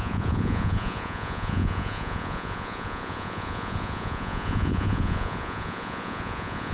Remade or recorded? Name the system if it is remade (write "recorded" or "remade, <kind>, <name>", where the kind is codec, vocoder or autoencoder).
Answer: remade, vocoder, Vocos